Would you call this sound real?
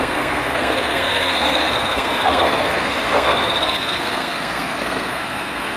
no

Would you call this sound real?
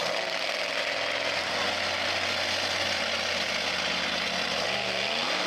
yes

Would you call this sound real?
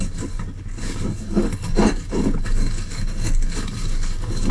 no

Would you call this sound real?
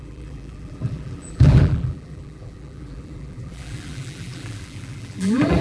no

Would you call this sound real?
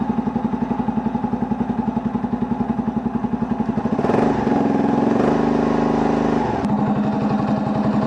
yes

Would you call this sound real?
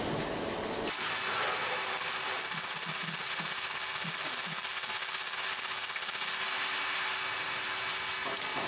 yes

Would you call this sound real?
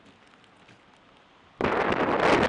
yes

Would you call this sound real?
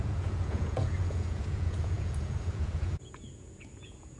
no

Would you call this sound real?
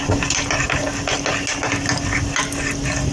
yes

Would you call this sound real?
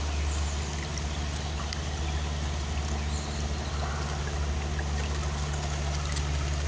yes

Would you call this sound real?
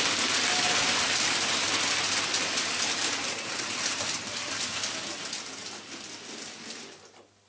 yes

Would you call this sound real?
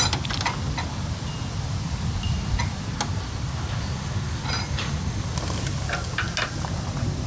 yes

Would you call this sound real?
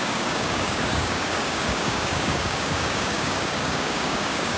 no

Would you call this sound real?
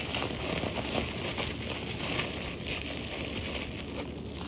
yes